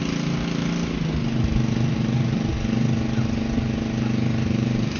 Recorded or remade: recorded